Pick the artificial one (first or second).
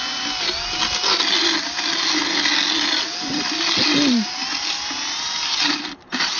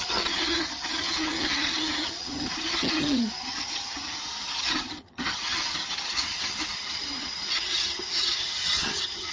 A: second